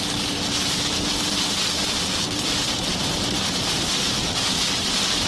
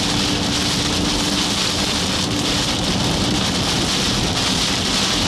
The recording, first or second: second